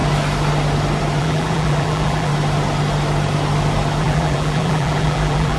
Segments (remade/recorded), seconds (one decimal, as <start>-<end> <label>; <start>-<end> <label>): 0.0-1.2 recorded; 1.2-2.3 remade; 2.3-4.0 recorded; 4.0-5.6 remade